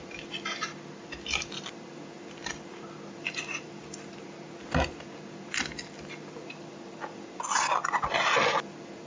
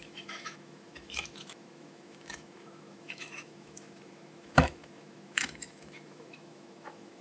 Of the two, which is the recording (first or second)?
first